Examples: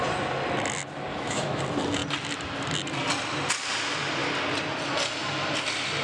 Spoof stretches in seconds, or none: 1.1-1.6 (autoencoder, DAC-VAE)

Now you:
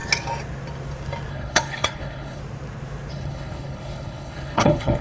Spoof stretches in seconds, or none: 1.3-2.4 (codec, HILCodec); 3.1-5.0

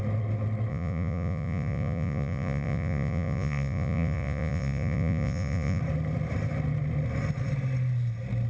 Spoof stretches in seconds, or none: 0.7-5.8 (vocoder, Vocos)